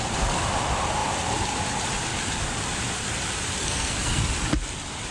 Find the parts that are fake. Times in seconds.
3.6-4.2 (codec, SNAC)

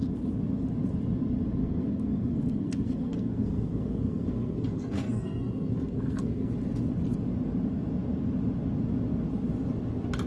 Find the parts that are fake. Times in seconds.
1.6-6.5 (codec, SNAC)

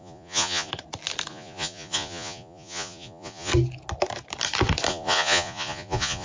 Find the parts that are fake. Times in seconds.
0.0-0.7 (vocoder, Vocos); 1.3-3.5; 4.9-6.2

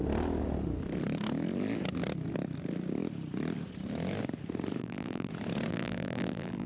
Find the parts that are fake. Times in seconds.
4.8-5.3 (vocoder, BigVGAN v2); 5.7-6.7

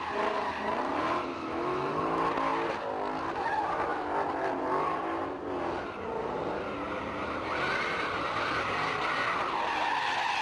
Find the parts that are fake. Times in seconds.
1.3-2.0 (autoencoder, DAC-VAE)

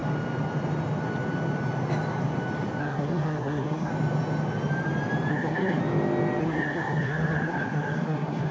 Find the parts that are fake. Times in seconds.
2.8-3.9 (codec, SNAC); 5.3-5.8; 6.4-8.5

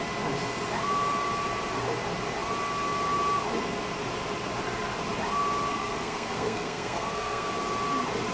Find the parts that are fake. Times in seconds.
5.7-7.5 (codec, SNAC)

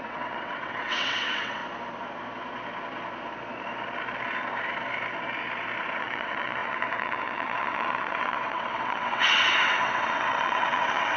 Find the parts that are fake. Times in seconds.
0.0-1.6 (vocoder, WaveNeXt); 6.0-11.2